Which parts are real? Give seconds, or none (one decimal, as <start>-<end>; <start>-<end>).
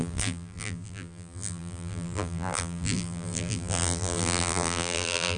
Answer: none